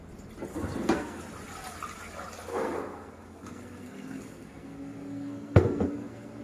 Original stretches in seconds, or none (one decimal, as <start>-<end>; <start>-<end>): 0.0-0.5; 1.2-2.5